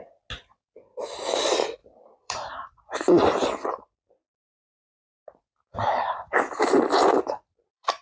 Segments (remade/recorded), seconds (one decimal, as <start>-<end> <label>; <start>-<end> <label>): 0.0-1.8 recorded; 1.8-4.0 remade; 4.0-4.8 recorded; 4.8-8.0 remade